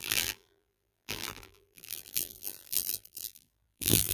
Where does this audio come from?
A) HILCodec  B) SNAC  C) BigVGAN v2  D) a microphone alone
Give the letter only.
C